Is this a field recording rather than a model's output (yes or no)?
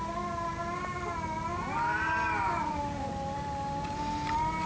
yes